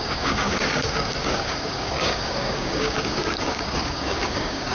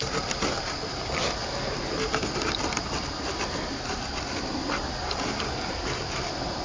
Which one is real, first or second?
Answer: second